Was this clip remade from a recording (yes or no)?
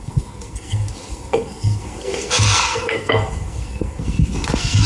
yes